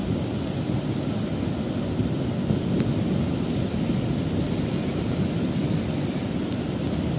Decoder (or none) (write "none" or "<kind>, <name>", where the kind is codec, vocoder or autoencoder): none